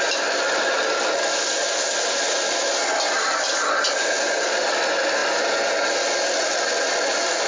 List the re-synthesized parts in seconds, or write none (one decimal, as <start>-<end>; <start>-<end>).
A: 1.3-2.2